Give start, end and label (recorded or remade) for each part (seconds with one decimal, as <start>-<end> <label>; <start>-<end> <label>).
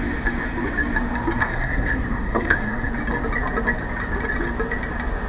0.0-1.4 recorded; 1.4-2.9 remade; 2.9-5.3 recorded